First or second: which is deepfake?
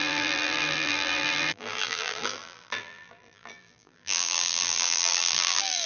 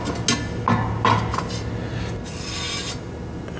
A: first